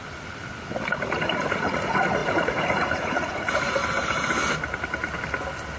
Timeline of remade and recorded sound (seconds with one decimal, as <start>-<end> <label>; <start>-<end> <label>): 0.0-1.4 recorded; 1.4-3.8 remade; 3.8-5.8 recorded